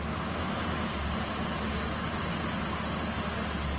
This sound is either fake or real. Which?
real